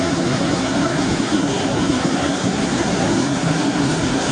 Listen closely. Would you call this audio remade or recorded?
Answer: remade